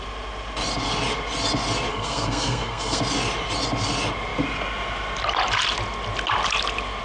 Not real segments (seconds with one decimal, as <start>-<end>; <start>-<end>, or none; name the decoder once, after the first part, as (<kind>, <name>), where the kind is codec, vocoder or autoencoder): 1.9-3.0 (codec, SNAC)